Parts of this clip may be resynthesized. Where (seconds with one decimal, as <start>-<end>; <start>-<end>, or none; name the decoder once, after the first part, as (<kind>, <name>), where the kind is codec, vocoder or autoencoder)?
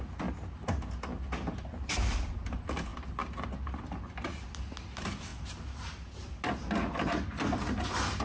none